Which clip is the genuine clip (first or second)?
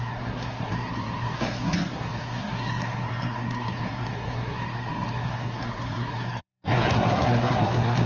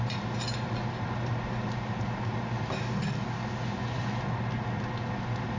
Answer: second